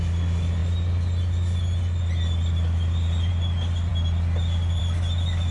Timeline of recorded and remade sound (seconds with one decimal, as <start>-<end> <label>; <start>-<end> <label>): 0.0-5.5 recorded